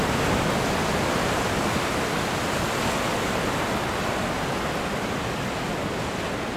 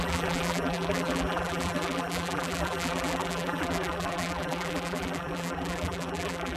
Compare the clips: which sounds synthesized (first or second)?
second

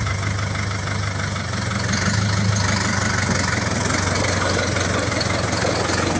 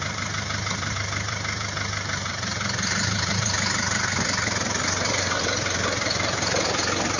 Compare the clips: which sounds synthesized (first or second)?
second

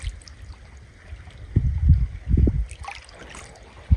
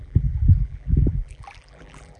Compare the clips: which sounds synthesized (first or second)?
second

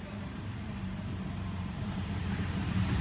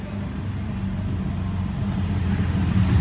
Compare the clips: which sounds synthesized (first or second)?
first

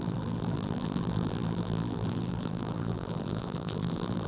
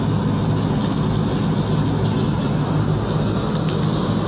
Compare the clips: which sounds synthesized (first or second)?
first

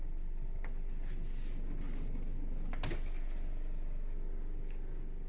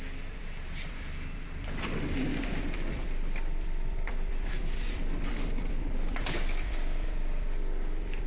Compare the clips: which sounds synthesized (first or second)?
second